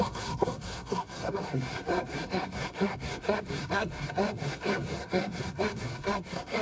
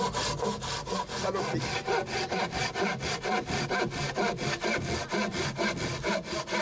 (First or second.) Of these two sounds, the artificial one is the first